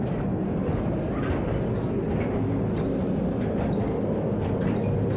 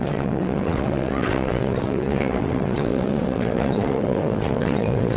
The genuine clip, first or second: first